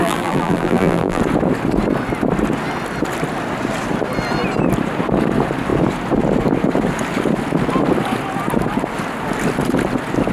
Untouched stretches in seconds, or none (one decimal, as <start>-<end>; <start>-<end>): 1.2-10.3